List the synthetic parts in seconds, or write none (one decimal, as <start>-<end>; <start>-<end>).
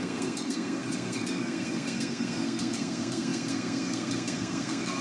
0.0-5.0